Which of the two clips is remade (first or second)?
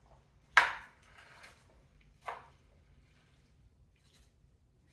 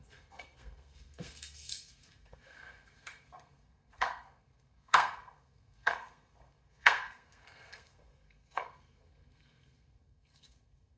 second